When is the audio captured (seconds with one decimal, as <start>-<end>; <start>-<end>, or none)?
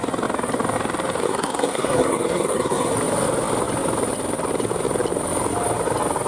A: 0.0-1.2; 2.9-6.3